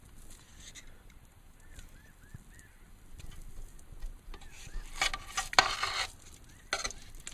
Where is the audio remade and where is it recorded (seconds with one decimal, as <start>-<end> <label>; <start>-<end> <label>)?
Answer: 0.0-7.3 recorded

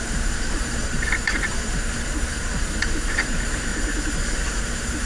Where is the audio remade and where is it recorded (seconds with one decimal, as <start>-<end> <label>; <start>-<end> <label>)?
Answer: 0.0-3.7 remade; 3.7-4.6 recorded; 4.6-5.1 remade

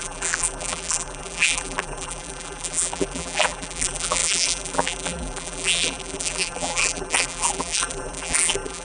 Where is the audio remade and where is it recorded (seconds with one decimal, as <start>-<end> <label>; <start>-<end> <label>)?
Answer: 0.0-8.8 remade

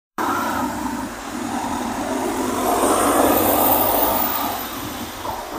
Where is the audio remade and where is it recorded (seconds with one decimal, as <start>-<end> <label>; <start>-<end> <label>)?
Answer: 0.0-1.2 remade; 1.2-2.2 recorded; 2.2-2.8 remade; 2.8-5.6 recorded